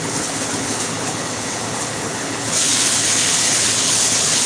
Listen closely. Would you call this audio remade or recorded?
remade